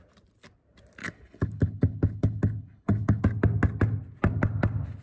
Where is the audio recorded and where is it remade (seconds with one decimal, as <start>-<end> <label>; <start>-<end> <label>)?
0.0-1.0 recorded; 1.0-3.2 remade; 3.2-5.0 recorded